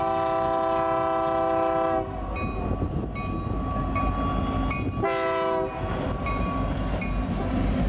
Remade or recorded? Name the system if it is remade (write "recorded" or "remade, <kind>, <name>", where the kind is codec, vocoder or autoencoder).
recorded